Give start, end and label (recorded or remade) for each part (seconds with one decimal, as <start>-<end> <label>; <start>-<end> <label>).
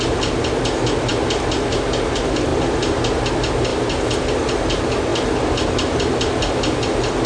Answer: 0.0-7.3 recorded